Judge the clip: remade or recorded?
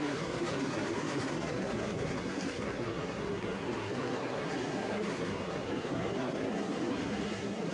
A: remade